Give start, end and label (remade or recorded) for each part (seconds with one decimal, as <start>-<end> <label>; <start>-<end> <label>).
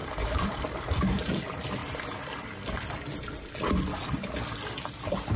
0.0-1.8 remade; 1.8-5.0 recorded; 5.0-5.4 remade